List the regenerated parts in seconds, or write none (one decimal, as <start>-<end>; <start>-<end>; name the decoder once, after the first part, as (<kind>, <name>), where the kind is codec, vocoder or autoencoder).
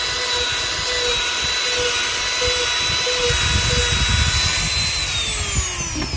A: none